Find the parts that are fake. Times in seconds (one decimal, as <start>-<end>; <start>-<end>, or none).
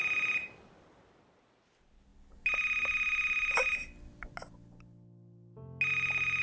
none